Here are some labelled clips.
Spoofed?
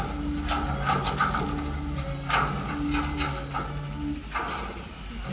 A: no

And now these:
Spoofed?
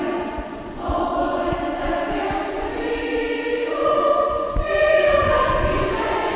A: yes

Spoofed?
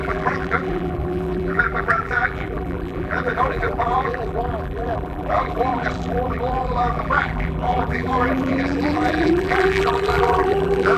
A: yes